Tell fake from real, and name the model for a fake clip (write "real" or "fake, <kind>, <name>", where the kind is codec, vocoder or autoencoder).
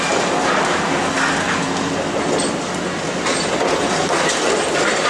real